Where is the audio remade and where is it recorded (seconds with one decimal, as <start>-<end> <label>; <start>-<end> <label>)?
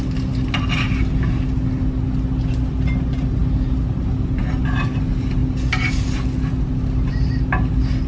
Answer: 0.0-8.1 recorded